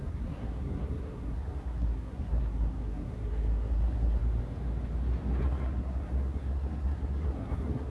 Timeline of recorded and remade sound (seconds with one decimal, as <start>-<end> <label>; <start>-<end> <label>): 0.0-4.2 remade; 4.2-5.4 recorded; 5.4-7.9 remade